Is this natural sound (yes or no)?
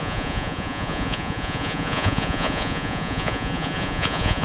no